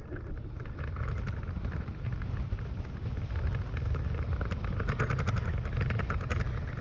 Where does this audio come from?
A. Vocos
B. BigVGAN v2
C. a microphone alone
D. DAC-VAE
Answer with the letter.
C